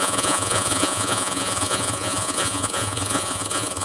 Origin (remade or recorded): remade